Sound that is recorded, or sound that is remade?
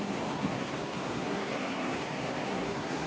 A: remade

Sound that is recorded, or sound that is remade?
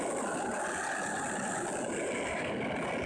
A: recorded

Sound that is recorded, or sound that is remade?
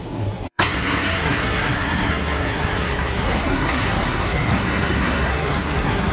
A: remade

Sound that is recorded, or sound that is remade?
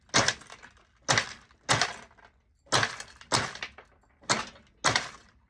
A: recorded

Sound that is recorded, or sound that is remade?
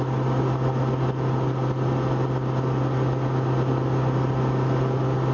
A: recorded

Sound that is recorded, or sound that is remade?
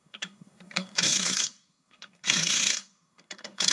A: remade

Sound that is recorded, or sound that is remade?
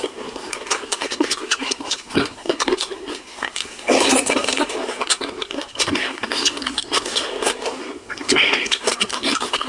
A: remade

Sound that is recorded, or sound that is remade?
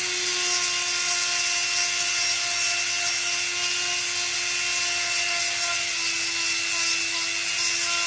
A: recorded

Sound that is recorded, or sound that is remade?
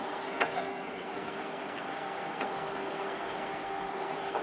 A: remade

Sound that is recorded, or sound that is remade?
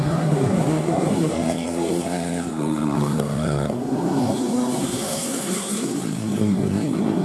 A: remade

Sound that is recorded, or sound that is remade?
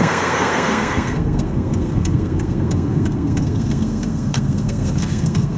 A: remade